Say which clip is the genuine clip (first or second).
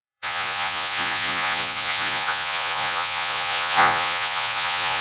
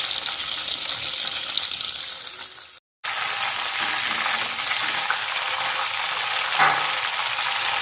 second